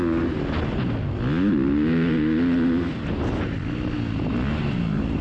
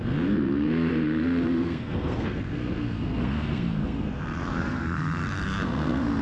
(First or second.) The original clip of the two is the first